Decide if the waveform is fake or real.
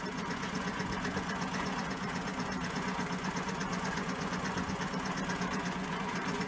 fake